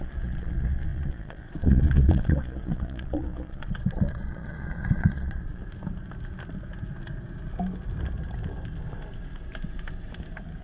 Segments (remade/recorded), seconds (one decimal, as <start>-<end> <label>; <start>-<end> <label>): 0.0-5.6 remade; 5.6-10.6 recorded